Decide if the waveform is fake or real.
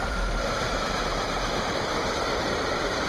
fake